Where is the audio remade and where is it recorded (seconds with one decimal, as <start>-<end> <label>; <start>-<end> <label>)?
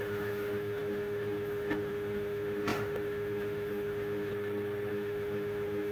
0.0-4.3 remade; 4.3-4.9 recorded; 4.9-5.9 remade